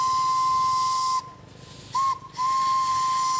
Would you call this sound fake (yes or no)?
no